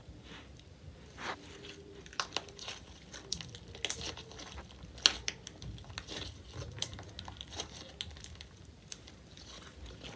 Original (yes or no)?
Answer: yes